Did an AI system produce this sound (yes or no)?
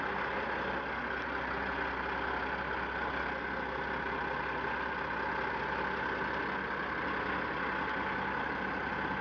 no